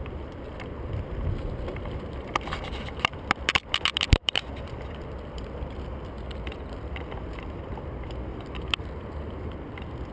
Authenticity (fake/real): fake